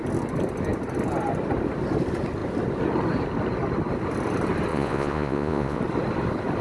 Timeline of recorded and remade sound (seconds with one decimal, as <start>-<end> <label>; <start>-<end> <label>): 0.0-4.7 recorded; 4.7-5.8 remade; 5.8-6.6 recorded